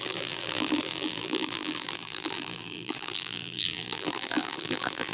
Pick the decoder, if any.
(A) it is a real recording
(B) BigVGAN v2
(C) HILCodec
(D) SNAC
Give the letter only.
B